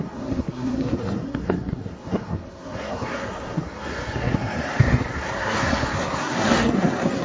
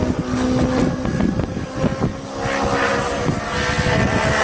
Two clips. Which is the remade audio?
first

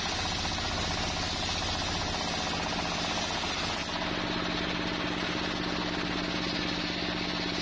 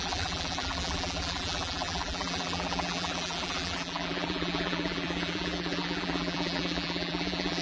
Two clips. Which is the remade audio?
second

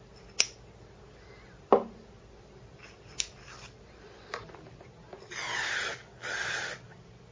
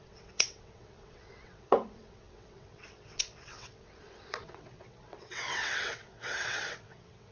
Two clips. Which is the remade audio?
second